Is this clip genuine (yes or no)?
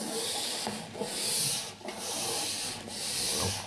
yes